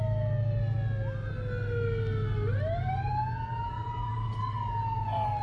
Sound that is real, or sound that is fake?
real